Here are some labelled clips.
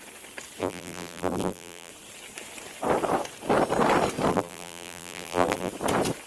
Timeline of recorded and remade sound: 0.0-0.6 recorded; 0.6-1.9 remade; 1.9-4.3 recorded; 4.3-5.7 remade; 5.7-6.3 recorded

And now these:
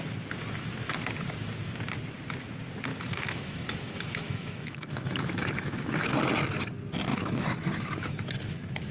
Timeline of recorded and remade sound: 0.0-2.9 recorded; 2.9-6.2 remade; 6.2-7.1 recorded; 7.1-8.9 remade

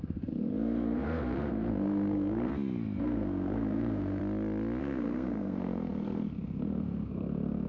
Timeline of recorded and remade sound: 0.0-2.5 remade; 2.5-3.0 recorded; 3.0-4.2 remade; 4.2-4.8 recorded; 4.8-7.7 remade